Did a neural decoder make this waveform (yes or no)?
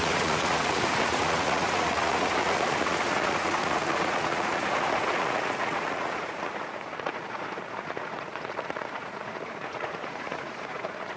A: yes